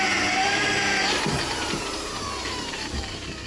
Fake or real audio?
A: fake